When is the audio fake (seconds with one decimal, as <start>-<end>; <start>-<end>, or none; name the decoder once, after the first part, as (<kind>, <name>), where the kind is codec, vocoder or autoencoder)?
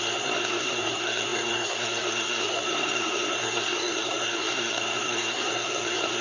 0.0-6.2 (codec, SNAC)